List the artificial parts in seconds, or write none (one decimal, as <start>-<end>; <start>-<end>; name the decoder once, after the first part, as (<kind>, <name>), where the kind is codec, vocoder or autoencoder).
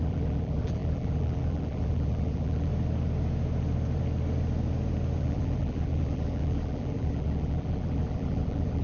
0.0-2.7 (vocoder, BigVGAN v2); 5.2-8.8